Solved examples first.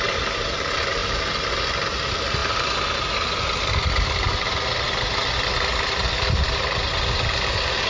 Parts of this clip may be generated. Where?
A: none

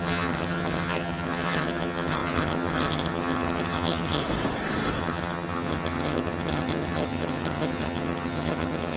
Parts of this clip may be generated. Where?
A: 0.0-4.2 (vocoder, HiFi-GAN); 5.0-9.0

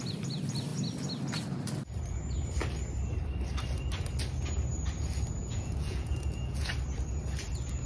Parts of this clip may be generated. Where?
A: 5.4-6.7 (vocoder, Vocos)

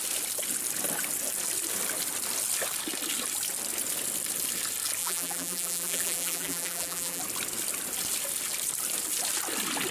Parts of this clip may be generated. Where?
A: 5.0-7.2 (vocoder, BigVGAN v2)

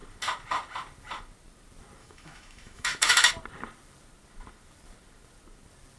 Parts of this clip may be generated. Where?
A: 2.0-3.3 (autoencoder, DAC-VAE)

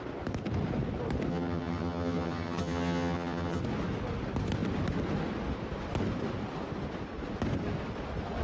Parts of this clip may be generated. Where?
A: 1.3-3.6 (vocoder, HiFi-GAN)

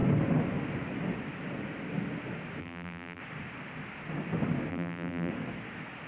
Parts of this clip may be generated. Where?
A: 2.6-3.2 (vocoder, BigVGAN v2); 4.7-5.3